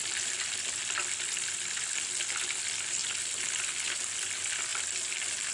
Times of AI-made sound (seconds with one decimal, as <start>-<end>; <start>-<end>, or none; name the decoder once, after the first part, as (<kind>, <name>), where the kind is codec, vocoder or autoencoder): 0.0-0.5 (vocoder, BigVGAN v2); 4.7-5.5